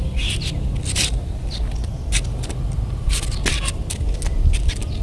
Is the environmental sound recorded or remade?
recorded